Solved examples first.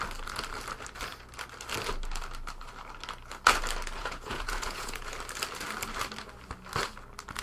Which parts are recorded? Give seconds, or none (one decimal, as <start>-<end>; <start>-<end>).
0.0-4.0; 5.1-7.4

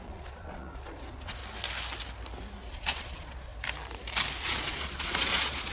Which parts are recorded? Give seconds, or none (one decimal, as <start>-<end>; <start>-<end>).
1.4-2.7; 3.5-4.4

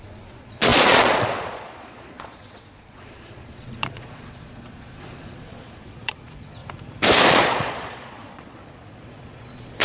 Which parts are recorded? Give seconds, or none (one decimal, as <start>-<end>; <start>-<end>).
6.6-7.3

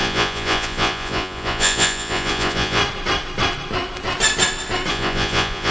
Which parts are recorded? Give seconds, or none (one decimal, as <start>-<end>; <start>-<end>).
2.8-4.9

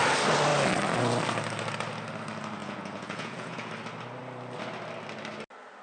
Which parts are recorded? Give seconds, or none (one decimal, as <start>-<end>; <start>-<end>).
0.0-2.6; 3.7-5.8

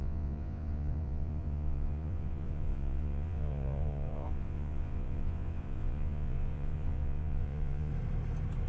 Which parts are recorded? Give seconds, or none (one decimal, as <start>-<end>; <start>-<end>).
7.9-8.7